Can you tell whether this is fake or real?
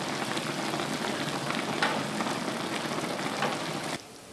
real